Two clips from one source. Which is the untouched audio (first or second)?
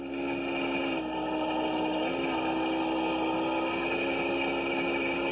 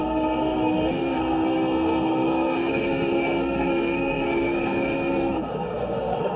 first